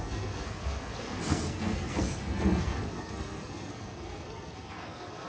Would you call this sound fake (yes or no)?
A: yes